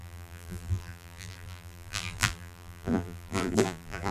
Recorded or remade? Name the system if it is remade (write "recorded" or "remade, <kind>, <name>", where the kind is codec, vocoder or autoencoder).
remade, vocoder, BigVGAN v2